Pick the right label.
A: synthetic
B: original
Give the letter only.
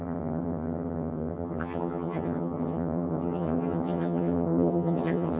A